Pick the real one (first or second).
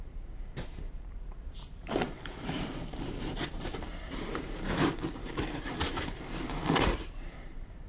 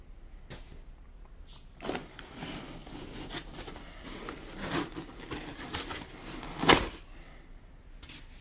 second